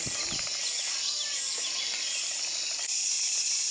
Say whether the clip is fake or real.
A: real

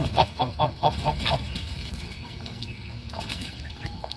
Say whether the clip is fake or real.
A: fake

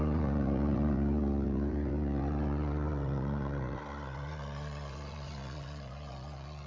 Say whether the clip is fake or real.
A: fake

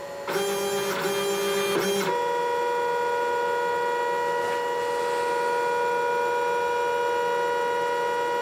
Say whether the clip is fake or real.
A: real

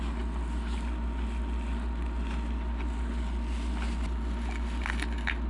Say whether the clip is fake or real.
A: real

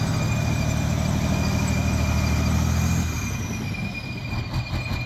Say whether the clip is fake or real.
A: real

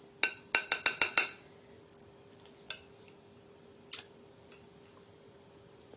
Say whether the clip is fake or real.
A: real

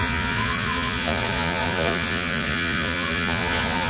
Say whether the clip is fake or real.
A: fake